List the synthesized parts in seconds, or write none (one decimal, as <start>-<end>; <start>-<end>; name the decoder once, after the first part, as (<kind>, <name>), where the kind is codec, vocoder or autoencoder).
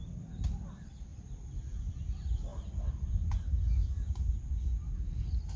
none